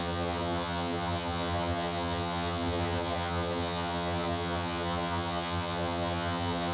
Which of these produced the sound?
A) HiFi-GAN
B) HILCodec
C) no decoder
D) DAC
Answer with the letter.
A